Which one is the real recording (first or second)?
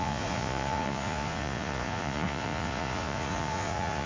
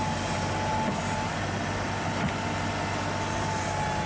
second